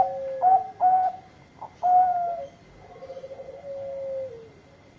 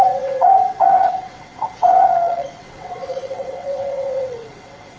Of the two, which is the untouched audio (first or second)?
first